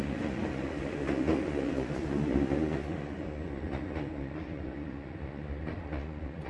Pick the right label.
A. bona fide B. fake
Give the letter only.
B